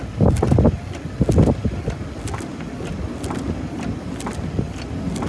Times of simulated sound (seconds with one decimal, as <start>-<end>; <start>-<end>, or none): none